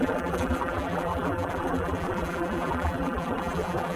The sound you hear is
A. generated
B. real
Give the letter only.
A